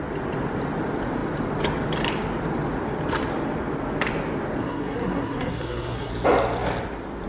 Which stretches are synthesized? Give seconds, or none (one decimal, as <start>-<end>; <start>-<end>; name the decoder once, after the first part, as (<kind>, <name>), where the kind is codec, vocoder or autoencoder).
4.6-6.1 (codec, SNAC)